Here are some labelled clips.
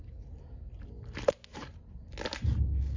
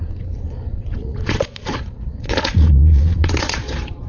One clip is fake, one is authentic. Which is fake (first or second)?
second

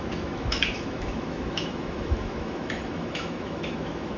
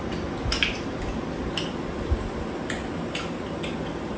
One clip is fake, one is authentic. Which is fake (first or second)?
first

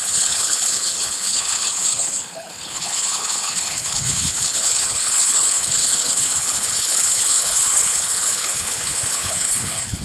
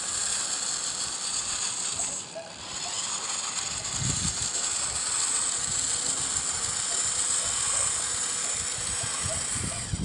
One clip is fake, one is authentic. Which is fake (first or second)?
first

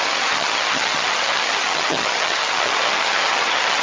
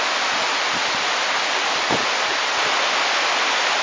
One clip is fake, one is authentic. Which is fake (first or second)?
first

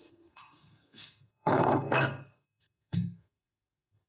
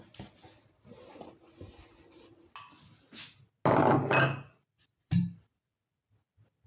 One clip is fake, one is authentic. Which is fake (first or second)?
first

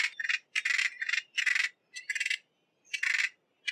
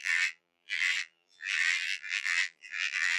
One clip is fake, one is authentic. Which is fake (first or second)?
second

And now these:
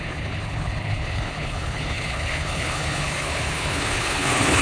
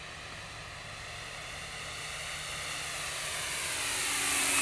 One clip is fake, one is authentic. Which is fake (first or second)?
first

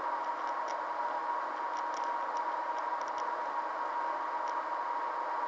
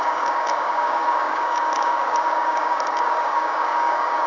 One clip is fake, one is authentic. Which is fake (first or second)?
second